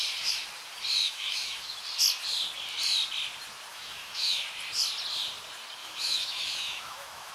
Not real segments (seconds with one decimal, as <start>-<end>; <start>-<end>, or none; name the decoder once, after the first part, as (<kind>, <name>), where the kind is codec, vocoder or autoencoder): 1.0-1.8 (autoencoder, DAC-VAE); 3.7-4.4; 5.8-7.3